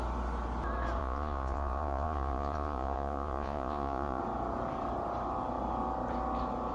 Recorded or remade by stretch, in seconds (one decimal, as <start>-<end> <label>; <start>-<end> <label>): 0.0-1.0 recorded; 1.0-4.2 remade; 4.2-6.7 recorded

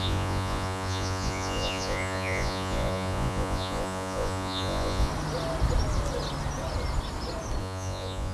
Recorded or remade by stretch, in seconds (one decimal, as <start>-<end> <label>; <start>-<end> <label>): 0.0-5.1 remade; 5.1-7.6 recorded; 7.6-8.3 remade

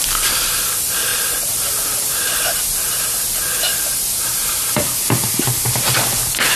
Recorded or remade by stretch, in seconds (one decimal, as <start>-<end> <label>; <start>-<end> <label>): 0.0-1.1 recorded; 1.1-2.1 remade; 2.1-3.7 recorded; 3.7-4.8 remade; 4.8-6.6 recorded